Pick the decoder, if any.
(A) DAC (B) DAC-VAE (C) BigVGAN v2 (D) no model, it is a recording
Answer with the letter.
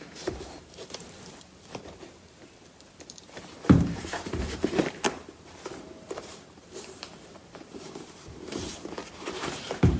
C